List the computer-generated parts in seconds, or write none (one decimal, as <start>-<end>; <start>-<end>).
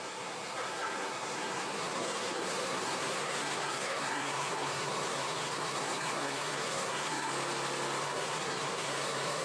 0.0-7.3; 8.0-9.4